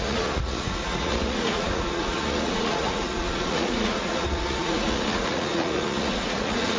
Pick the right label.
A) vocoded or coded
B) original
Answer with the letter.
A